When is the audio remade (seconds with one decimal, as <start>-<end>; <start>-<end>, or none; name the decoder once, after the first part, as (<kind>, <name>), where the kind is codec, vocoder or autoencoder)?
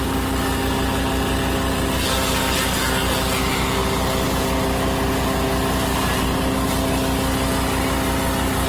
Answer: none